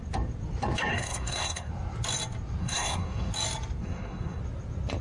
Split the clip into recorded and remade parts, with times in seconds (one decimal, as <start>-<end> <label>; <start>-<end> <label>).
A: 0.0-0.9 recorded; 0.9-1.7 remade; 1.7-2.6 recorded; 2.6-3.3 remade; 3.3-3.8 recorded; 3.8-4.4 remade; 4.4-5.0 recorded